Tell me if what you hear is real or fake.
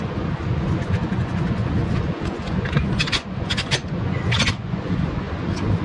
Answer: fake